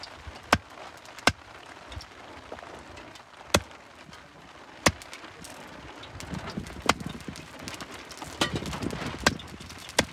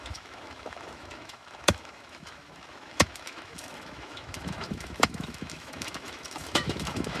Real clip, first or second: first